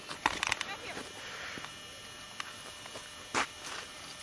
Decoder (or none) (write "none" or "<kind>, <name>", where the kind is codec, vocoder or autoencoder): none